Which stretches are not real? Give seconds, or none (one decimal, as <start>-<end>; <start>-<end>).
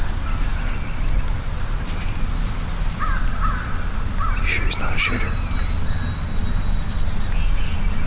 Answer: none